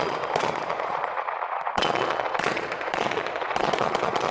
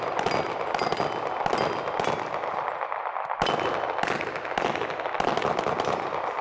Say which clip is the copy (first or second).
first